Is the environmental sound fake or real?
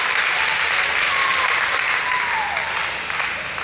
real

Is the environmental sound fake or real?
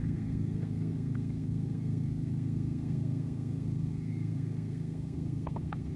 fake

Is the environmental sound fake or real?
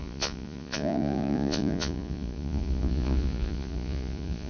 fake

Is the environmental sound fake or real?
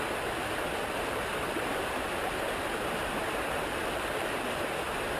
real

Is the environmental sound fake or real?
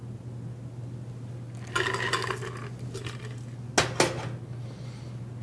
real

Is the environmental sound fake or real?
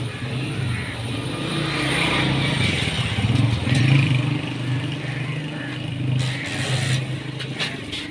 real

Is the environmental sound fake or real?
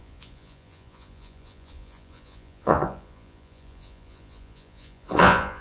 fake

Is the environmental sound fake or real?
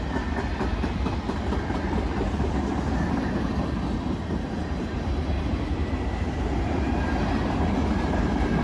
real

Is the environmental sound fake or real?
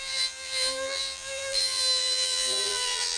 fake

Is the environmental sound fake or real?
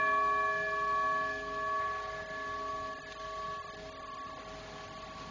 real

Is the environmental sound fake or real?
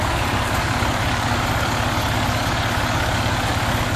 fake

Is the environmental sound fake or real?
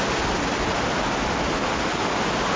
real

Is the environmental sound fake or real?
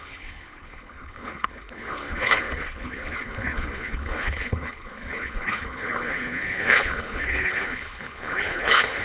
fake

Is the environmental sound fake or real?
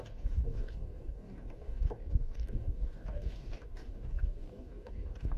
fake